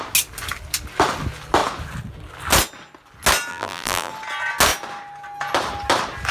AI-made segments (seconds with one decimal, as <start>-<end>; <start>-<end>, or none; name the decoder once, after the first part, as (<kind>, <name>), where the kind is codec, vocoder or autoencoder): 3.5-4.1 (vocoder, BigVGAN v2)